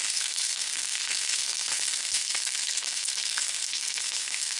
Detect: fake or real fake